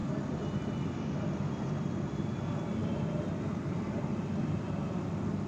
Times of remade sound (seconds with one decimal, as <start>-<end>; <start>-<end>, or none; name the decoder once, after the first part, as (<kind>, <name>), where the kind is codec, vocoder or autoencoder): none